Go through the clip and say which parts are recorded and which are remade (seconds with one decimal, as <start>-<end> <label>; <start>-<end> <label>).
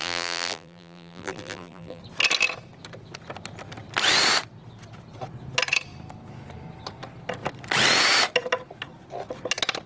0.0-2.0 remade; 2.0-9.9 recorded